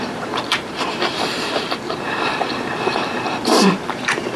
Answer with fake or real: fake